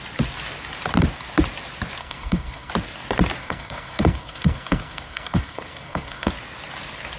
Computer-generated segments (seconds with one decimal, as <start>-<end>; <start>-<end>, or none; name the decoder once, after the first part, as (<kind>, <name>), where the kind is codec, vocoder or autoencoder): 2.0-2.7 (codec, SNAC); 3.4-6.3